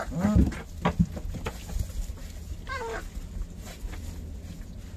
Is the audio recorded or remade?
recorded